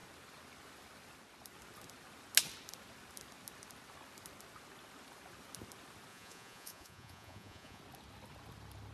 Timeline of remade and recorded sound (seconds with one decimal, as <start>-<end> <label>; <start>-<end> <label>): 0.0-6.1 recorded; 6.1-7.8 remade; 7.8-8.9 recorded